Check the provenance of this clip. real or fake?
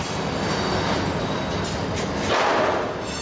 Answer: real